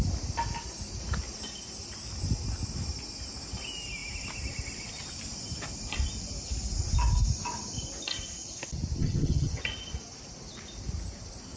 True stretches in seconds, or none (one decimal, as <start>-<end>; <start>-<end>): 0.0-9.0; 9.6-11.6